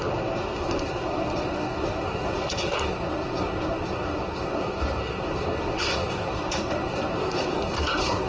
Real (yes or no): no